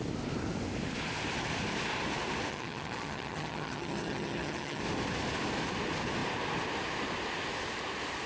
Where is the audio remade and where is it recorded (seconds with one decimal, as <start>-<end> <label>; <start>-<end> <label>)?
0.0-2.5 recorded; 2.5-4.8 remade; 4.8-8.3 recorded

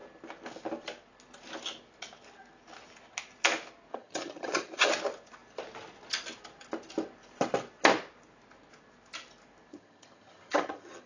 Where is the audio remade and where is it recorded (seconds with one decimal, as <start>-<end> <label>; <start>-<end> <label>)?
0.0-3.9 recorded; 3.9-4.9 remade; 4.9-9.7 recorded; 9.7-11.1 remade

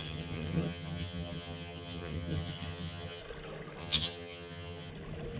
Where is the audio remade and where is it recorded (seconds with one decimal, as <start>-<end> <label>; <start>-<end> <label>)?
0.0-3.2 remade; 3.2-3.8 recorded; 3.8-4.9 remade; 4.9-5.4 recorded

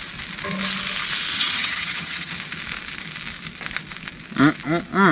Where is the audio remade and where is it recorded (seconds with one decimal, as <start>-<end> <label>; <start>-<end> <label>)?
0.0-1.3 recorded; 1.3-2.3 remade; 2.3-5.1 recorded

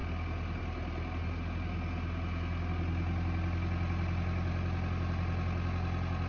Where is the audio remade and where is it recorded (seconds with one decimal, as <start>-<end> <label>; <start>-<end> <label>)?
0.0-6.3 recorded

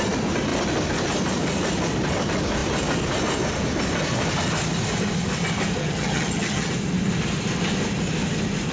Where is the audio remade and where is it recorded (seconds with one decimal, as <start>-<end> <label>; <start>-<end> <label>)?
0.0-5.8 recorded; 5.8-6.7 remade; 6.7-8.7 recorded